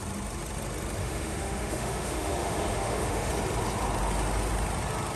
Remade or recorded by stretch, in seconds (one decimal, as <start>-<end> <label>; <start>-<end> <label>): 0.0-1.0 recorded; 1.0-3.3 remade; 3.3-5.2 recorded